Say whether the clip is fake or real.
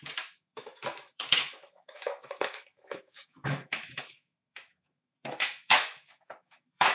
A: fake